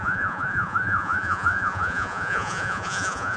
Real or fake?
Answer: fake